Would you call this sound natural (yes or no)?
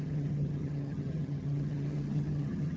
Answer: no